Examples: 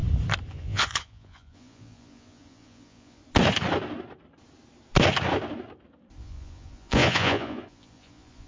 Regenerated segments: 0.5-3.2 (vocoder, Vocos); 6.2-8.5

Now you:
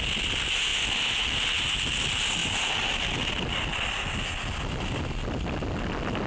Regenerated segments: none